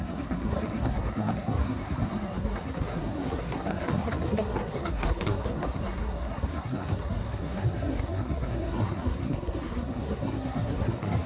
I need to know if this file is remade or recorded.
remade